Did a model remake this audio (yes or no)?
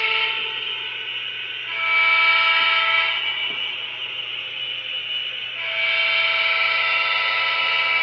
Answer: no